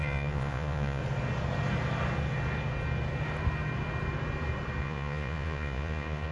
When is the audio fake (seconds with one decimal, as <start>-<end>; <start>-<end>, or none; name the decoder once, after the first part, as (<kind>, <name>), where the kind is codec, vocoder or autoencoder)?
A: 0.0-1.0 (vocoder, Vocos); 4.8-6.3